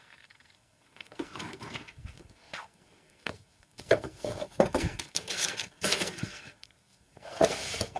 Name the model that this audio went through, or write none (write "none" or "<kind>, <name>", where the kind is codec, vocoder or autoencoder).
codec, SNAC